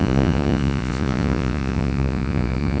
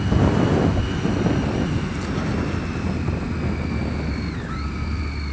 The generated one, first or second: first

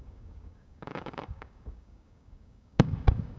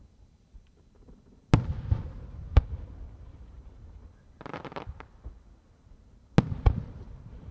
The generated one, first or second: first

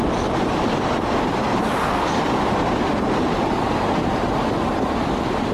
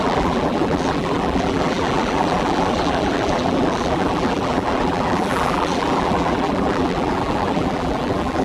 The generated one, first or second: second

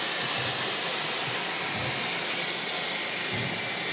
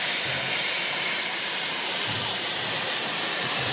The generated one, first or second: second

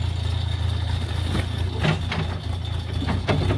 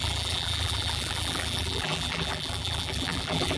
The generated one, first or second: second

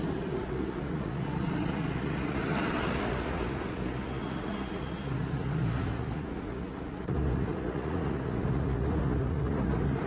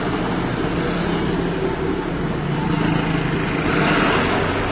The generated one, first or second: first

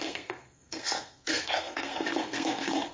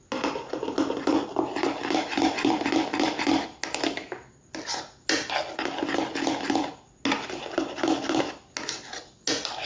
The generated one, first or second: first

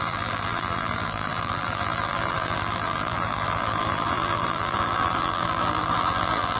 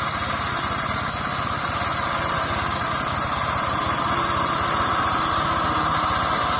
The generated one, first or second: first